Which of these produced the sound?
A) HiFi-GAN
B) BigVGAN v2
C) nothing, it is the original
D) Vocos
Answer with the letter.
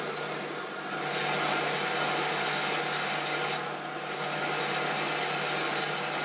C